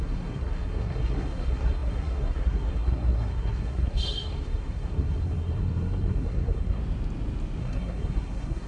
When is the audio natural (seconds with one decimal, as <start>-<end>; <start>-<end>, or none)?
6.8-7.6